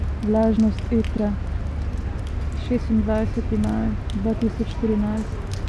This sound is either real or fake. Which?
real